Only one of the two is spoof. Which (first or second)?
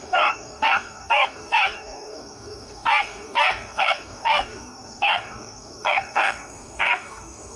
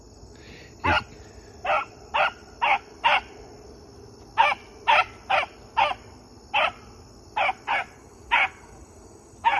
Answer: first